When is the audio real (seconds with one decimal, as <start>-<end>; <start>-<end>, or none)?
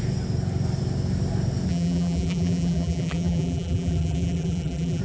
0.0-1.7